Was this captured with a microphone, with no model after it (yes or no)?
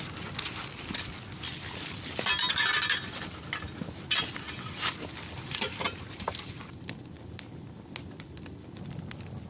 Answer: yes